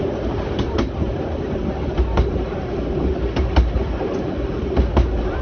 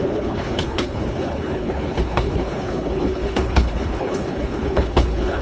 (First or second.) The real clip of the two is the first